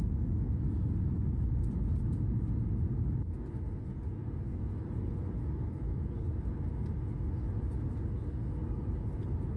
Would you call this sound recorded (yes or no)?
yes